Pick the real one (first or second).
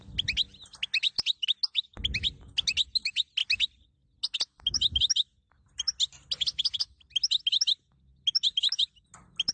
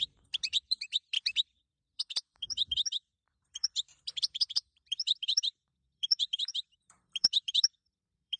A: first